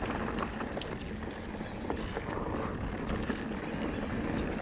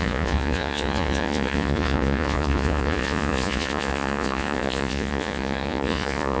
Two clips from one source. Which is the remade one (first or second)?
second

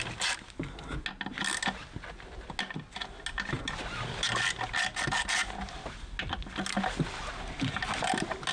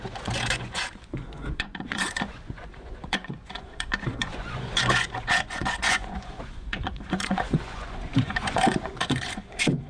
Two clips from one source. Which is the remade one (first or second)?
second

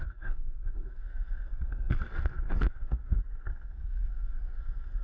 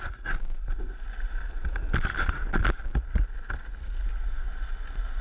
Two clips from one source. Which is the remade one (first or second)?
first